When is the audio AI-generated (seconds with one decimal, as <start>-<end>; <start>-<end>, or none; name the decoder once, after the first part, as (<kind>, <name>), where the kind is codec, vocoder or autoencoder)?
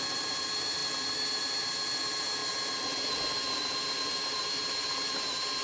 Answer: none